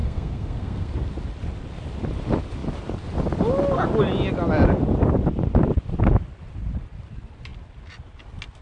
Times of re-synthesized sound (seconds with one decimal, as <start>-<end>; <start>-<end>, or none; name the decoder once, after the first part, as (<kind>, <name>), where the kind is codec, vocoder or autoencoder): 0.0-0.9 (codec, SNAC)